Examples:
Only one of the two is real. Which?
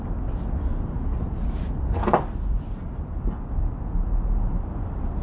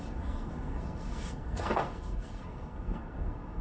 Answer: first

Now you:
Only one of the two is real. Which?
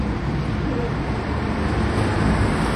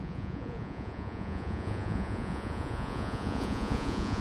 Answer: first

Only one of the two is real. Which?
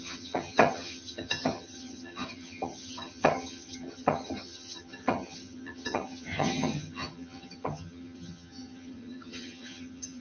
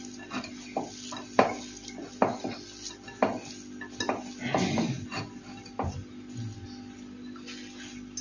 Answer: second